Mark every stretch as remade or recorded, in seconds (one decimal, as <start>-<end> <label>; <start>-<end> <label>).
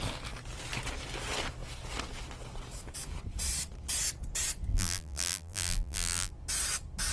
0.0-4.7 recorded; 4.7-6.3 remade; 6.3-7.1 recorded